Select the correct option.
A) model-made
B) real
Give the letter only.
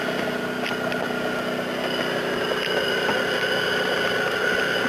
B